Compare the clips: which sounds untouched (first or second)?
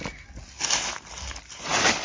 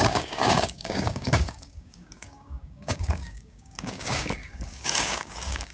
first